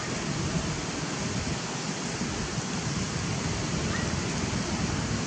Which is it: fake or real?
real